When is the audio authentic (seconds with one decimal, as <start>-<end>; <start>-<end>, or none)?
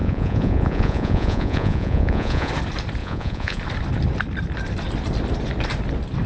2.5-3.0; 3.6-6.3